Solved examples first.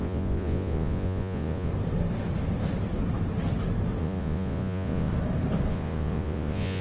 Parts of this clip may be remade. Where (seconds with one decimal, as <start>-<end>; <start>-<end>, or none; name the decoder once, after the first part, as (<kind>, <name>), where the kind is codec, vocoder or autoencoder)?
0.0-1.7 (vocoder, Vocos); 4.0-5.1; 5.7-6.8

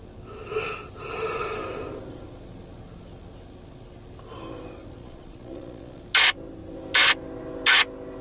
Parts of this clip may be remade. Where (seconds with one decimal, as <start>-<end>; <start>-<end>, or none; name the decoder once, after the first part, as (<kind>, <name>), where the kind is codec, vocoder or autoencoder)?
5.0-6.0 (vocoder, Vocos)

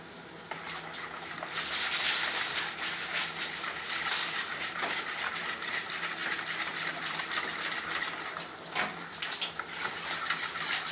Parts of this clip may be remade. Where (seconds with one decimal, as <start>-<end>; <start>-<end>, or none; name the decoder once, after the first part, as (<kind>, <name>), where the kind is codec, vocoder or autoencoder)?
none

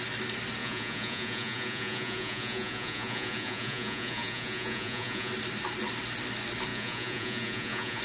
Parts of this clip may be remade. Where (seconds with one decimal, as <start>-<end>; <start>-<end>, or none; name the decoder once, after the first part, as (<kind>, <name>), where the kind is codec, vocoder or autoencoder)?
0.6-5.3 (vocoder, Vocos); 6.7-8.0

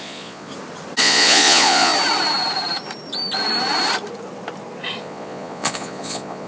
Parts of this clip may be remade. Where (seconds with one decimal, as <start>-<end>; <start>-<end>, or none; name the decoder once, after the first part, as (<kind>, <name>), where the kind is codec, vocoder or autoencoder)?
0.0-0.5 (vocoder, Vocos); 1.0-1.9; 5.0-6.5